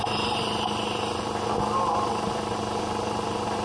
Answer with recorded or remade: recorded